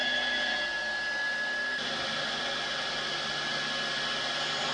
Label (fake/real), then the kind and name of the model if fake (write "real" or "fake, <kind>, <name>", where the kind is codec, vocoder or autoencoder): real